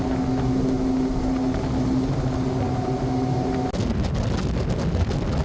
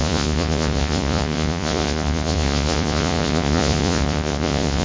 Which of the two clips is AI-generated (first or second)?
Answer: second